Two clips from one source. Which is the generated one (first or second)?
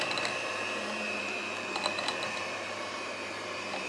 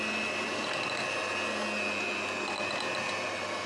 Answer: first